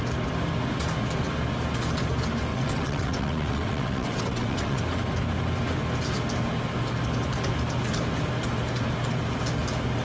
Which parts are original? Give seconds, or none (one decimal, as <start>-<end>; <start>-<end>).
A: 0.0-2.5; 4.8-10.0